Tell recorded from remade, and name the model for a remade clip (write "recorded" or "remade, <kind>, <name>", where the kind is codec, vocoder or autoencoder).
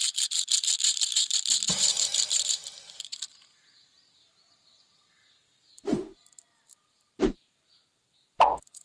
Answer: remade, vocoder, BigVGAN v2